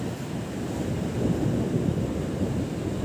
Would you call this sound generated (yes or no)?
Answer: no